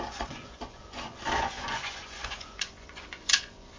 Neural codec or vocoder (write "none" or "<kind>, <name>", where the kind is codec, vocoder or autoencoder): vocoder, Vocos